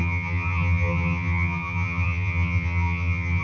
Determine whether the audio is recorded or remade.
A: remade